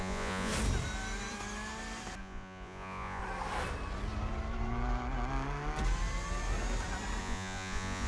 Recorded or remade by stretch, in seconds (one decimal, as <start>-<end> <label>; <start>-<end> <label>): 0.0-0.5 remade; 0.5-2.2 recorded; 2.2-3.2 remade; 3.2-7.2 recorded; 7.2-8.1 remade